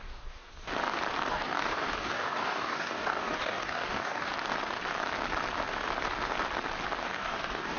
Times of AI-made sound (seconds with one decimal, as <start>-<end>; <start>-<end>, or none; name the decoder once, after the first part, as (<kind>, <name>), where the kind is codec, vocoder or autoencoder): 0.0-0.5 (codec, DAC); 1.3-4.3; 7.0-7.8